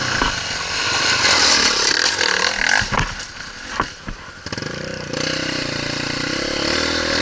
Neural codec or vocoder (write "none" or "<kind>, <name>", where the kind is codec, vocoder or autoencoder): none